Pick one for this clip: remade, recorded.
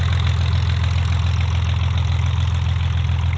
recorded